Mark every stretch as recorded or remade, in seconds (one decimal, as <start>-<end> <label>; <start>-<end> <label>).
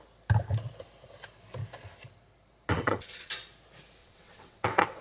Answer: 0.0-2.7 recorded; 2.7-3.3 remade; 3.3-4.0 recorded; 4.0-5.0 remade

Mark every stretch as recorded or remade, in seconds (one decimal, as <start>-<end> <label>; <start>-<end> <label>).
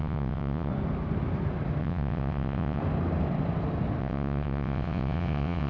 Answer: 0.0-0.7 remade; 0.7-1.8 recorded; 1.8-2.8 remade; 2.8-4.0 recorded; 4.0-5.7 remade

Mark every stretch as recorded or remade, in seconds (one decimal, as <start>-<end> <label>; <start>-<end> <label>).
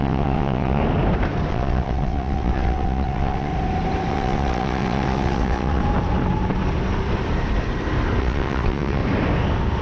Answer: 0.0-0.8 remade; 0.8-1.5 recorded; 1.5-3.5 remade; 3.5-4.1 recorded; 4.1-5.8 remade; 5.8-8.2 recorded; 8.2-9.0 remade; 9.0-9.8 recorded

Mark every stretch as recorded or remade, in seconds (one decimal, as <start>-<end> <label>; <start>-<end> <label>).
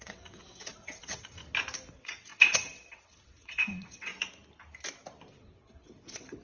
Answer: 0.0-1.4 remade; 1.4-1.9 recorded; 1.9-4.1 remade; 4.1-5.3 recorded; 5.3-6.4 remade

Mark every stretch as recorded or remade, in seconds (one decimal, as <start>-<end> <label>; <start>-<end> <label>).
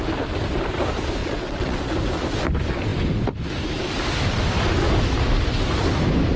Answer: 0.0-1.2 recorded; 1.2-1.8 remade; 1.8-6.4 recorded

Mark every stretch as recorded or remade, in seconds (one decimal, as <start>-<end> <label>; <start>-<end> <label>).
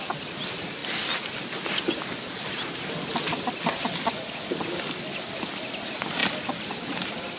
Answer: 0.0-7.4 recorded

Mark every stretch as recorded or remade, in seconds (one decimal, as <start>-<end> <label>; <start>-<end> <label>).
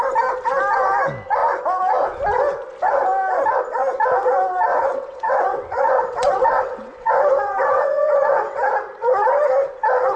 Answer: 0.0-4.7 recorded; 4.7-8.7 remade; 8.7-10.2 recorded